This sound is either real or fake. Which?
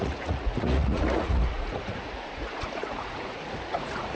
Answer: fake